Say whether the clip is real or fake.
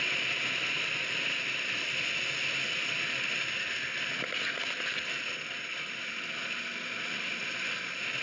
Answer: real